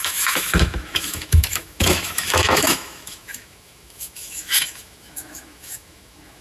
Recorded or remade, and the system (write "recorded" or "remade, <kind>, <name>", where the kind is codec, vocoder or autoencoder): remade, autoencoder, DAC-VAE